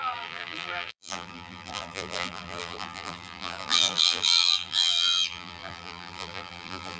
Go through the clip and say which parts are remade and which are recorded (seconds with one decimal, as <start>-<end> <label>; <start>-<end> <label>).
0.0-7.0 remade